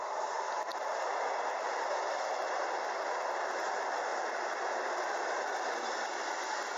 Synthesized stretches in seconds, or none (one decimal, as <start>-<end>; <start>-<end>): none